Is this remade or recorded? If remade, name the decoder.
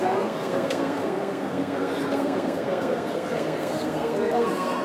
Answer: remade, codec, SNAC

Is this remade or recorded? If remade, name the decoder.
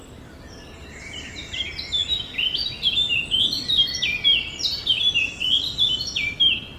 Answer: recorded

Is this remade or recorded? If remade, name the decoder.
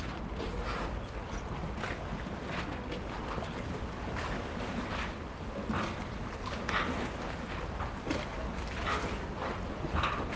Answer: recorded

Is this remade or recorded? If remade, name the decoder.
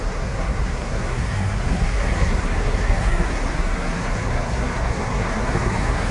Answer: remade, codec, SNAC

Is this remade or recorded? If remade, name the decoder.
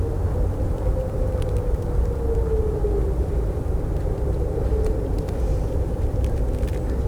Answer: recorded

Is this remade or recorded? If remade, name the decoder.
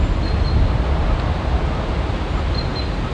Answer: recorded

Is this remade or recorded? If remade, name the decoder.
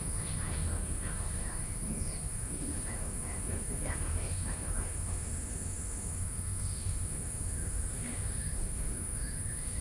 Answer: remade, autoencoder, DAC-VAE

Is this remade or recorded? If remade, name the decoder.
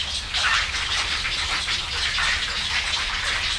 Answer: recorded